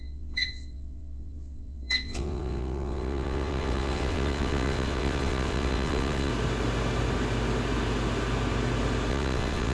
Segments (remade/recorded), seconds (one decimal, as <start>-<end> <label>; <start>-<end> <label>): 0.0-6.3 remade; 6.3-9.1 recorded; 9.1-9.7 remade